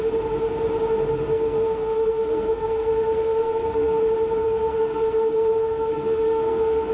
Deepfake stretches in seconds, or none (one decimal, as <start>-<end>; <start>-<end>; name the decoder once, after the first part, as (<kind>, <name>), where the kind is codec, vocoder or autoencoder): 1.3-4.0 (codec, SNAC); 4.4-6.9